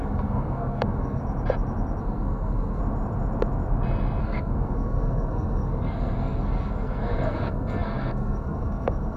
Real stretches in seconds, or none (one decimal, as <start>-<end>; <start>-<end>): 1.2-2.0; 2.8-4.2

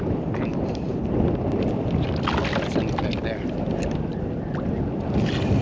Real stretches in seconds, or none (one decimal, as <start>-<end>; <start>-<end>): 0.0-5.6

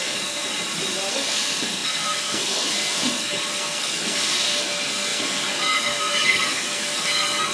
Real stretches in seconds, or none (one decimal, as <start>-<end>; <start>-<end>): 0.5-1.1

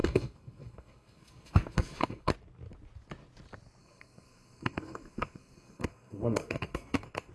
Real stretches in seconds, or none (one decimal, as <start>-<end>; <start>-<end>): 2.3-3.8

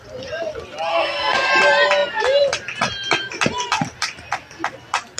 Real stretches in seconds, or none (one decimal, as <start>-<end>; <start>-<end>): 0.0-0.9; 1.5-5.2